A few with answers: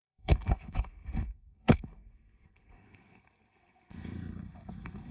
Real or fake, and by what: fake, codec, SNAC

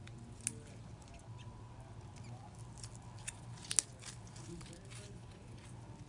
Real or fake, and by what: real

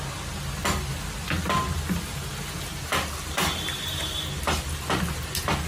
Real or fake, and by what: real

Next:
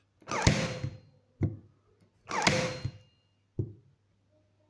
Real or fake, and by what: real